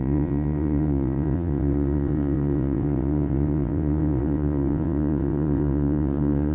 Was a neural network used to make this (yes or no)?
yes